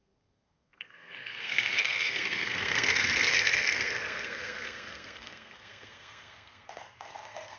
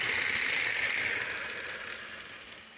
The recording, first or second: second